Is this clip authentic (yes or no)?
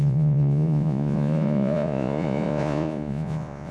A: no